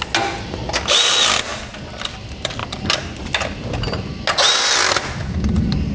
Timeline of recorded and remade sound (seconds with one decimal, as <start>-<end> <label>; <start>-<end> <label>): 0.0-5.9 recorded